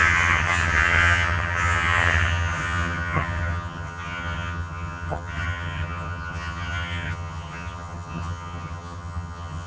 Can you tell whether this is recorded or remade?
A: remade